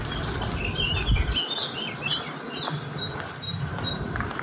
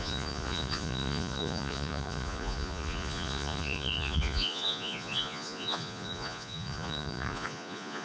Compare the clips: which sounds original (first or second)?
first